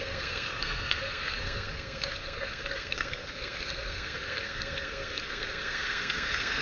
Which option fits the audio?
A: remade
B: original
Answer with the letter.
A